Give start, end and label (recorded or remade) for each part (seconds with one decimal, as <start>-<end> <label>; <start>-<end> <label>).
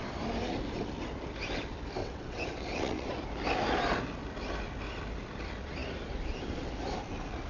0.0-2.0 recorded; 2.0-3.1 remade; 3.1-7.5 recorded